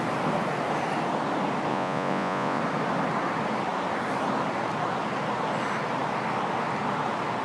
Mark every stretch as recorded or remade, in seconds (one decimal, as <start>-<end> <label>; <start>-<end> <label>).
0.0-1.7 recorded; 1.7-2.6 remade; 2.6-7.4 recorded